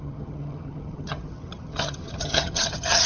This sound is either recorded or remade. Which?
remade